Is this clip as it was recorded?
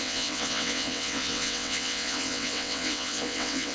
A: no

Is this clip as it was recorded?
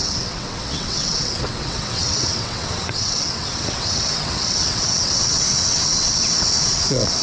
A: no